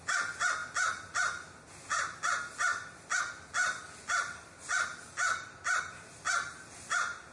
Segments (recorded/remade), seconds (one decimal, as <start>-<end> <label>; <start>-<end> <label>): 0.0-3.6 recorded; 3.6-5.8 remade; 5.8-7.3 recorded

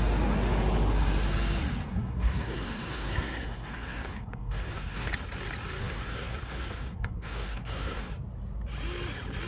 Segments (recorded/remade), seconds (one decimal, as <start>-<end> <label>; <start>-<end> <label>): 0.0-1.9 recorded; 1.9-5.1 remade; 5.1-5.8 recorded; 5.8-8.1 remade; 8.1-9.5 recorded

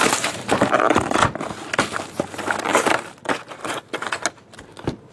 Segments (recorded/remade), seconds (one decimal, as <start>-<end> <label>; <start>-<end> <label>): 0.0-1.2 remade; 1.2-2.6 recorded; 2.6-3.6 remade; 3.6-5.1 recorded

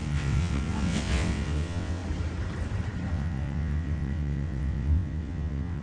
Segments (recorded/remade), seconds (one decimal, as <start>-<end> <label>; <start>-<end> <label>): 0.0-2.0 remade; 2.0-3.1 recorded; 3.1-5.8 remade

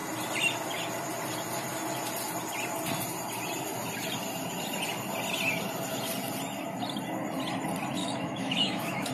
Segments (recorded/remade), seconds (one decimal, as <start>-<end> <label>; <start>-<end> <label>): 0.0-8.0 recorded; 8.0-9.1 remade